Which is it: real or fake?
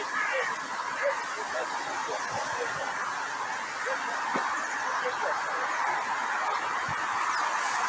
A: real